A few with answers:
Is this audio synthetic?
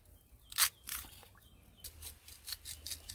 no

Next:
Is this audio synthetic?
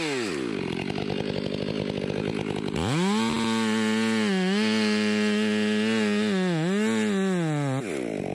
no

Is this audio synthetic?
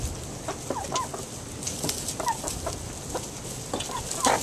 no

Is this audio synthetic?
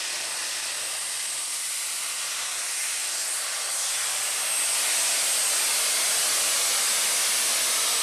no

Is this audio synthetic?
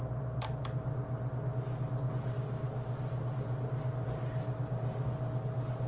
no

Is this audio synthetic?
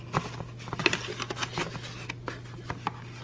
no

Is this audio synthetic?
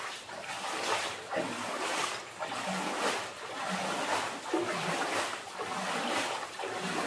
no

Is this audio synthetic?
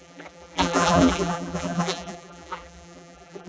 yes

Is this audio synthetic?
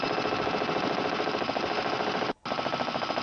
no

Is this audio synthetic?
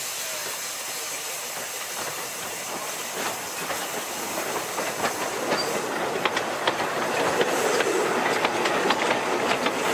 no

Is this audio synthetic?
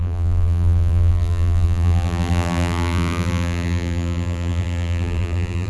yes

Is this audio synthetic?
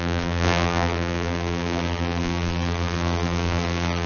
yes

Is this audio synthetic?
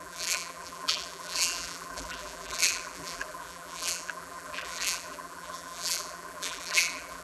yes